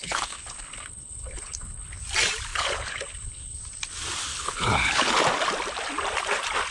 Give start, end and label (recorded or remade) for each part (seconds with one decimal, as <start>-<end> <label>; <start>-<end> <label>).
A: 0.0-2.0 remade; 2.0-2.5 recorded; 2.5-3.6 remade; 3.6-4.3 recorded; 4.3-5.1 remade; 5.1-6.7 recorded